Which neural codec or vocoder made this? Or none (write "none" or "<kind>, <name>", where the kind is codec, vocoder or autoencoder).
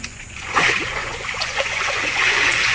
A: vocoder, Vocos